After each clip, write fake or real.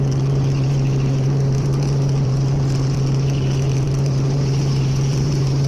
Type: fake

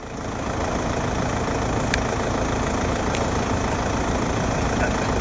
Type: real